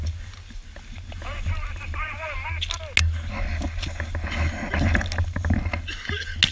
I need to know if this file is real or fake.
real